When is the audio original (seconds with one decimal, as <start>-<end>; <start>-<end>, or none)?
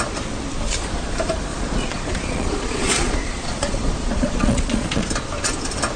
0.0-1.5; 5.1-6.0